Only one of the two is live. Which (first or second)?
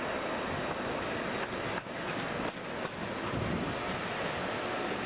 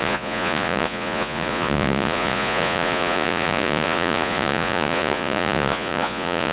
first